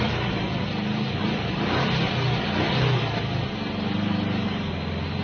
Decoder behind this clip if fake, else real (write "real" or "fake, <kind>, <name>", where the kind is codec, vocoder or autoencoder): real